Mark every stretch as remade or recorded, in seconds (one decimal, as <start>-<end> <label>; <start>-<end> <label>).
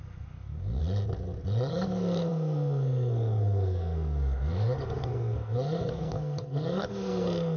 0.0-0.8 remade; 0.8-1.7 recorded; 1.7-7.6 remade